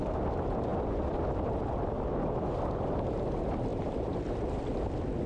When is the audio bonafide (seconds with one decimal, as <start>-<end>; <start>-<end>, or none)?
0.0-5.3